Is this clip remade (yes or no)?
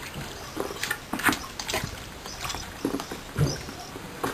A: no